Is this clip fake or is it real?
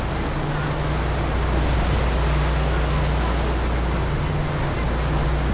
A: real